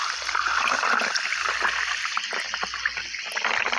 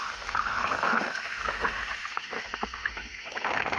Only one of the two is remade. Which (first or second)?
second